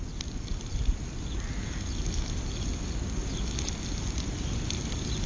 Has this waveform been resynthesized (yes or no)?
no